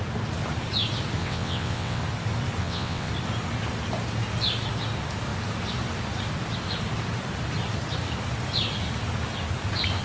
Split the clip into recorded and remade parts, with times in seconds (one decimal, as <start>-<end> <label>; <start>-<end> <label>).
0.0-1.2 recorded; 1.2-2.0 remade; 2.0-2.6 recorded; 2.6-3.1 remade; 3.1-10.0 recorded